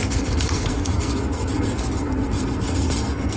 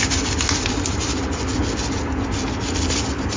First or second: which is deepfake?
first